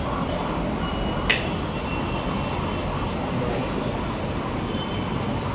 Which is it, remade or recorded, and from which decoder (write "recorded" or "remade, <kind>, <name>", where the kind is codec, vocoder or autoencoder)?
recorded